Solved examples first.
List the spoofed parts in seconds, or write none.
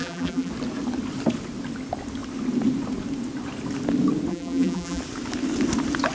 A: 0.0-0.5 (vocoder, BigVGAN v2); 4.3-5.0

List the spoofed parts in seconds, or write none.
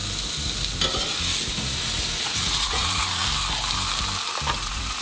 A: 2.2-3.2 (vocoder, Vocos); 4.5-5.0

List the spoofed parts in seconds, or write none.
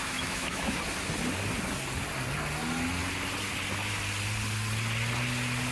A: 0.0-0.8 (autoencoder, DAC-VAE)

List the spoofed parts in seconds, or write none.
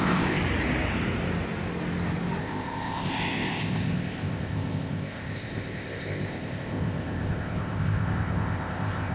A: 0.0-0.4 (codec, ZipCodec); 2.4-9.1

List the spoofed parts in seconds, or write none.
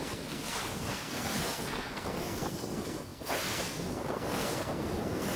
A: 0.0-5.4 (codec, SNAC)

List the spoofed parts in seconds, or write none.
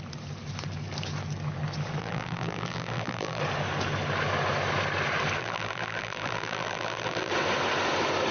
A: 2.0-3.4 (vocoder, BigVGAN v2); 5.4-7.3